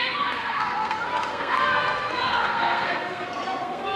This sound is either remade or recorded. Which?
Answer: remade